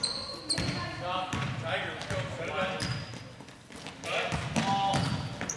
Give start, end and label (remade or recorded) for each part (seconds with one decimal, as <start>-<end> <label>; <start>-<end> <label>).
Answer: 0.0-5.6 recorded